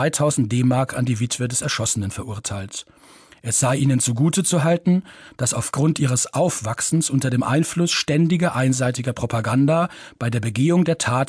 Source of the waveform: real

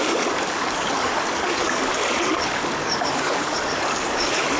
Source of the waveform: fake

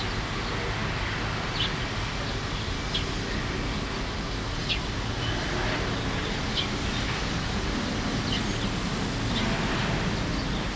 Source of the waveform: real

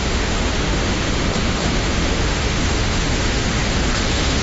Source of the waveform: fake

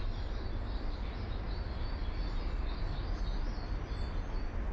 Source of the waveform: real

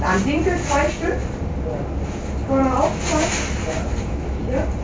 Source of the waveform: real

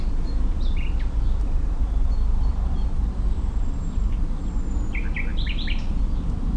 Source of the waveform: real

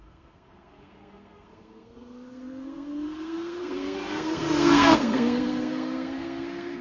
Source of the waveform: fake